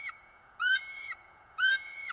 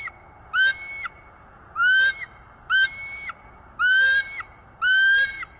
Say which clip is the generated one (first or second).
first